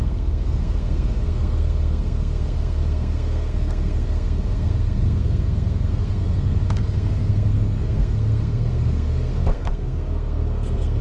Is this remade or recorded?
remade